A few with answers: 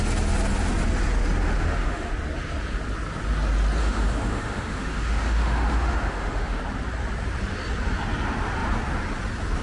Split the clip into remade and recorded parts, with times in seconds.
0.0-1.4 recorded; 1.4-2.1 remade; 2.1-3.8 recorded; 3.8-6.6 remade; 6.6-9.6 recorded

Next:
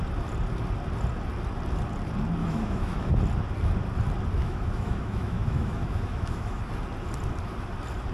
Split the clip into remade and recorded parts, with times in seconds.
0.0-2.4 recorded; 2.4-3.1 remade; 3.1-4.4 recorded; 4.4-6.6 remade; 6.6-8.1 recorded

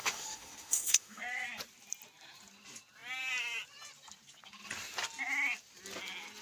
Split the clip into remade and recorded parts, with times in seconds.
0.0-1.2 remade; 1.2-6.4 recorded

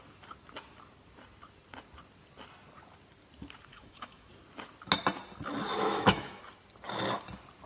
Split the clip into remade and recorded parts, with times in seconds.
0.0-3.7 recorded; 3.7-4.3 remade; 4.3-5.7 recorded; 5.7-6.4 remade; 6.4-7.7 recorded

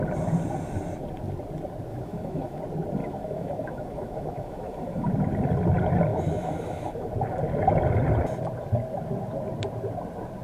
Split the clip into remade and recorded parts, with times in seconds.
0.0-1.9 recorded; 1.9-2.6 remade; 2.6-3.0 recorded; 3.0-5.1 remade; 5.1-6.1 recorded; 6.1-7.1 remade; 7.1-10.4 recorded

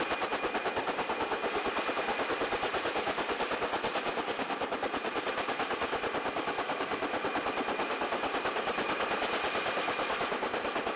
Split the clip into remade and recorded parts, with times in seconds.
0.0-11.0 recorded